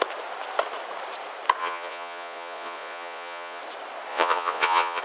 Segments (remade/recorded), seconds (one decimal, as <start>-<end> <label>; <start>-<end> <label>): 0.0-1.6 recorded; 1.6-3.6 remade; 3.6-4.1 recorded; 4.1-5.0 remade